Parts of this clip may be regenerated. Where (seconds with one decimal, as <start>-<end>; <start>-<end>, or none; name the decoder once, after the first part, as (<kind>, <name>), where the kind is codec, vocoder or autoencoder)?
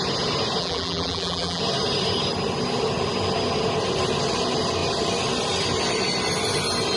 0.6-1.6 (vocoder, BigVGAN v2)